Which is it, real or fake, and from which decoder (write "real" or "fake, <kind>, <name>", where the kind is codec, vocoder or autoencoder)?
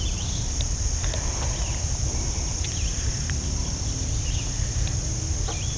fake, vocoder, BigVGAN v2